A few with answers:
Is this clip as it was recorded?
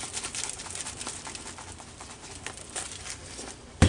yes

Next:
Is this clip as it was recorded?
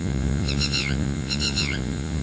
no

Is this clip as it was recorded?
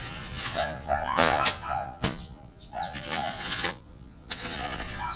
no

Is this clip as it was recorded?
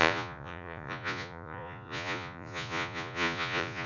no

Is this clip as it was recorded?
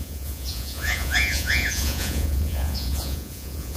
no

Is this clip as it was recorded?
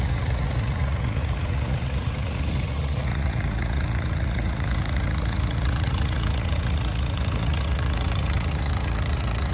no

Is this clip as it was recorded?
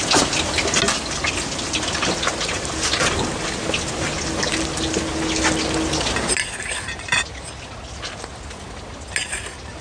yes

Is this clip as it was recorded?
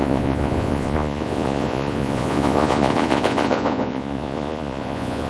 no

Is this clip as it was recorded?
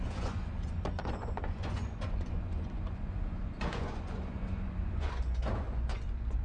no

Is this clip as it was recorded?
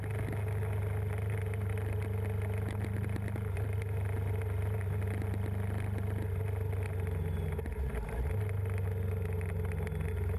yes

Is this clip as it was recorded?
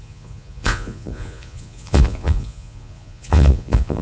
no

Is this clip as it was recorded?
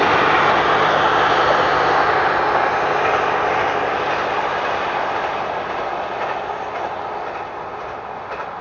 yes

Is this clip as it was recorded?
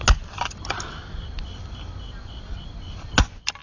yes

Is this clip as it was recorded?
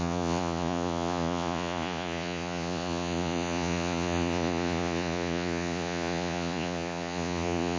no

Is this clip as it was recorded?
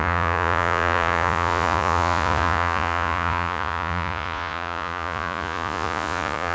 no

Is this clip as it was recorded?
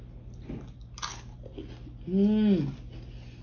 yes